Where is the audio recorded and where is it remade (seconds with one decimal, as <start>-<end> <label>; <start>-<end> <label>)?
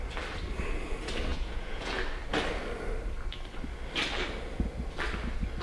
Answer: 0.0-1.3 recorded; 1.3-1.9 remade; 1.9-5.6 recorded